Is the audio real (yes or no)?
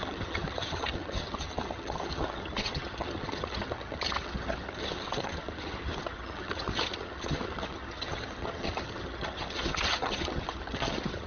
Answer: no